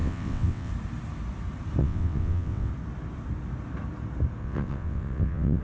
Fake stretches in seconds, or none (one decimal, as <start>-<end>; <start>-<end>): 0.0-0.7; 1.8-2.7; 4.4-5.6